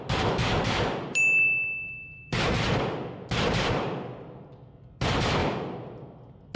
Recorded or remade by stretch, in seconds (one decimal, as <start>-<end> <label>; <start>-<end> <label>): 0.0-6.6 recorded